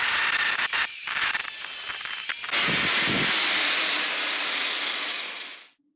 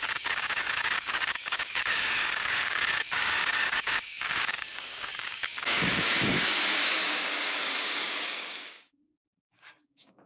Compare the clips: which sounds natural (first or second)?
first